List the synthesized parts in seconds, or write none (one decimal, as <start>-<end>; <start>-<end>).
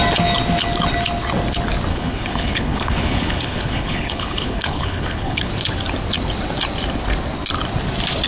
1.9-5.5